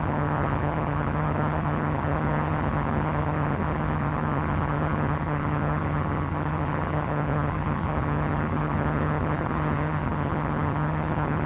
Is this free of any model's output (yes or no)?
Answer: no